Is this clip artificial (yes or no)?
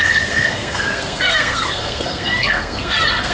yes